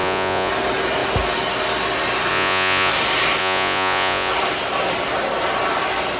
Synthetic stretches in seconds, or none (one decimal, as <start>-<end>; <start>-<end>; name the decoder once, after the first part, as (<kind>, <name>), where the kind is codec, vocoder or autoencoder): 0.0-0.5 (vocoder, Vocos); 2.3-2.9; 3.4-4.3